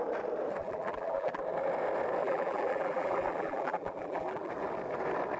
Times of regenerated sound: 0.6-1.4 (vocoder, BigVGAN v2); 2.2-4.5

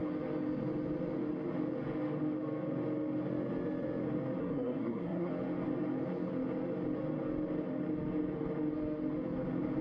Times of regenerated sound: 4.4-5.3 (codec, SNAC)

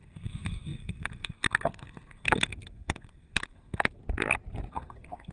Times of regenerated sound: 0.0-4.0 (codec, SNAC); 4.7-5.3